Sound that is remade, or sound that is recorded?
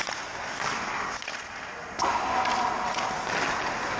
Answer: recorded